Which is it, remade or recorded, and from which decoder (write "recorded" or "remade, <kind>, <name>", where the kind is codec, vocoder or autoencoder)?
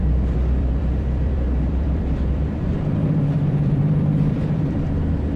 remade, vocoder, BigVGAN v2